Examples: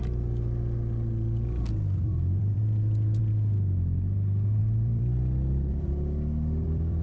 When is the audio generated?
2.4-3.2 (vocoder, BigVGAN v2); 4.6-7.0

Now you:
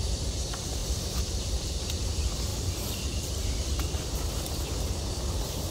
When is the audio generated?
0.0-2.5 (vocoder, BigVGAN v2); 5.2-5.7

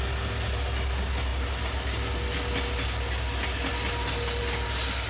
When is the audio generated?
none

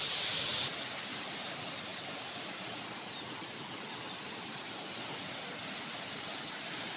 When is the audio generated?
none

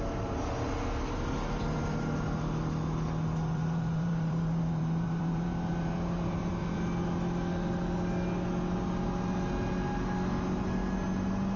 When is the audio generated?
3.5-6.6 (vocoder, BigVGAN v2)

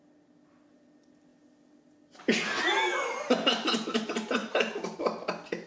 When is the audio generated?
4.4-5.0 (vocoder, BigVGAN v2)

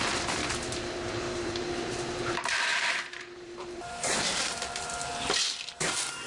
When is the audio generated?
0.0-0.4 (vocoder, BigVGAN v2); 1.1-5.1; 5.8-6.3